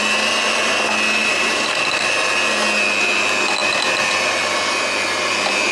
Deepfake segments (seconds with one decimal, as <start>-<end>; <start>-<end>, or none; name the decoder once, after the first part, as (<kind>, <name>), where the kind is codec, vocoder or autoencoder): 1.2-2.1 (vocoder, BigVGAN v2)